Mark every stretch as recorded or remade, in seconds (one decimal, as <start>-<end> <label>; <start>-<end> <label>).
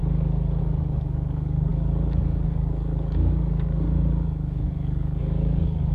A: 0.0-0.6 recorded; 0.6-5.9 remade